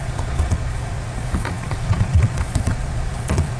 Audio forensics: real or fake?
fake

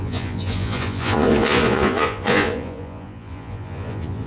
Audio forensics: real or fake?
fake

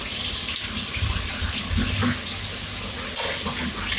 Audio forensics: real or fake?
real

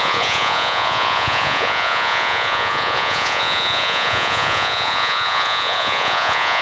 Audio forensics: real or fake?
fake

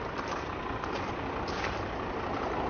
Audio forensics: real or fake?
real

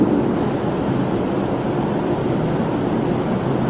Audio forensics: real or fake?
real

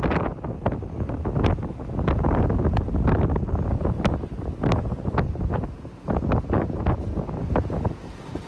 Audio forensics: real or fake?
real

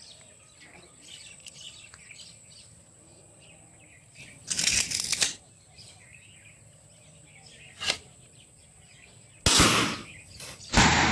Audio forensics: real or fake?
real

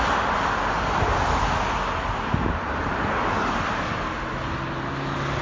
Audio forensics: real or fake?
real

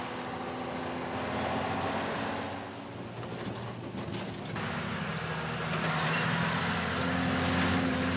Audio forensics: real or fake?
real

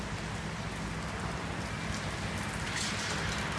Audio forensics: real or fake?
real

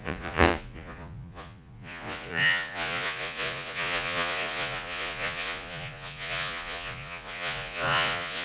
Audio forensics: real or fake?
fake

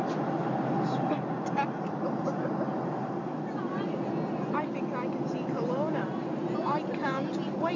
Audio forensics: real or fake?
real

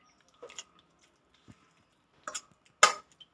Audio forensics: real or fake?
real